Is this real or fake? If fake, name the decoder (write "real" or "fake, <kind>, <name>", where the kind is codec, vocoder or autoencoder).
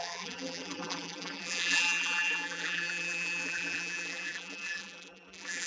fake, vocoder, BigVGAN v2